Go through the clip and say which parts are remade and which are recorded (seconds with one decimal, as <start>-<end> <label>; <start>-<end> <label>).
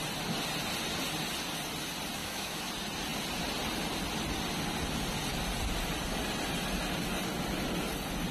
0.0-2.2 recorded; 2.2-2.7 remade; 2.7-8.3 recorded